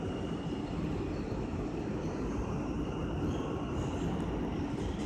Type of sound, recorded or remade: recorded